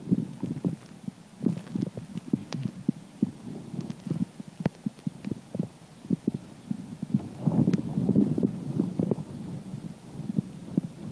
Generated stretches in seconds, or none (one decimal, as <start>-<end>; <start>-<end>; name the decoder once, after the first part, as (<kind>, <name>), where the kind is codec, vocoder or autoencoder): 8.0-9.2 (vocoder, BigVGAN v2)